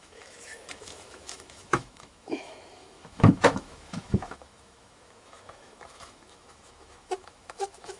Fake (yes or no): yes